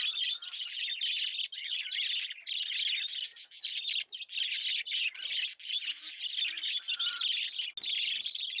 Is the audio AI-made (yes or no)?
no